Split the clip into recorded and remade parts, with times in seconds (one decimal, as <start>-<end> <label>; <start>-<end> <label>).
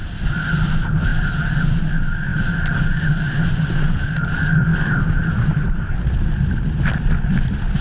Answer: 0.0-1.1 recorded; 1.1-1.9 remade; 1.9-4.7 recorded; 4.7-7.8 remade